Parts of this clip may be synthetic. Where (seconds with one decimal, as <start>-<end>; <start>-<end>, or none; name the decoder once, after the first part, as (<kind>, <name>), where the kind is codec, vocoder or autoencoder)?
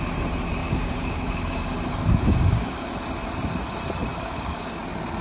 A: 0.6-2.9 (codec, DAC); 4.1-4.8